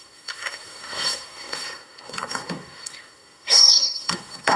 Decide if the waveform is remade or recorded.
remade